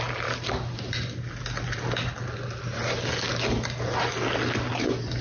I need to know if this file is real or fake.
real